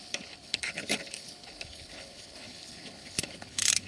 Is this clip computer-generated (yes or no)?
yes